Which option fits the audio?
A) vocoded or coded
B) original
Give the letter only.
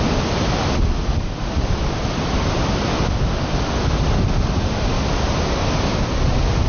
B